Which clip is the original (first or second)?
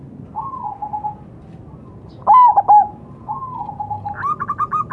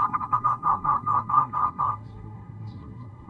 first